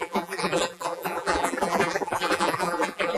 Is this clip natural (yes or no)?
no